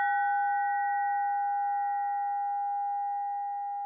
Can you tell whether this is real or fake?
real